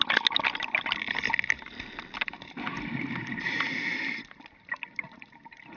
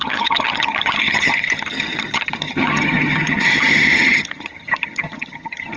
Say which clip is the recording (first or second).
first